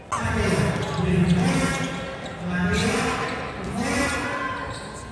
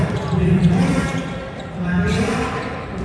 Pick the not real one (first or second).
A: second